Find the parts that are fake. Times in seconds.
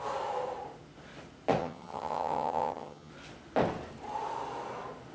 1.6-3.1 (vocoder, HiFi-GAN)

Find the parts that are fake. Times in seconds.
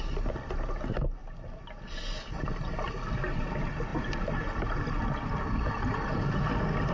none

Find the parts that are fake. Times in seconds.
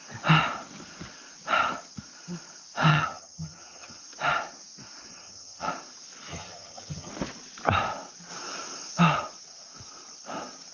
2.9-4.0 (vocoder, HiFi-GAN); 5.1-5.7; 6.3-7.1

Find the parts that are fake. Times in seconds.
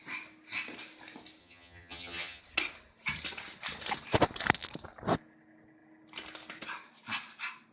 1.4-2.4 (vocoder, HiFi-GAN)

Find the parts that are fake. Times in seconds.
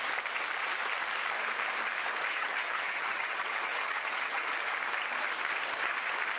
2.3-4.5 (vocoder, HiFi-GAN)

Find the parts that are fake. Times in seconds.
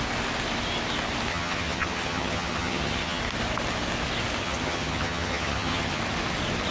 1.3-3.2 (vocoder, HiFi-GAN); 4.4-6.0